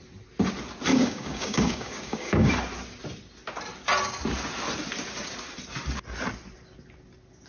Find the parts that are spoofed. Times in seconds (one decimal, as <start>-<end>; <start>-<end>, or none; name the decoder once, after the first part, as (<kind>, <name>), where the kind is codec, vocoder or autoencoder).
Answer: 0.9-2.5 (codec, DAC)